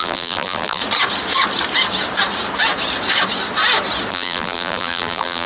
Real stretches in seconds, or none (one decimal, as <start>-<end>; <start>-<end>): 0.8-4.1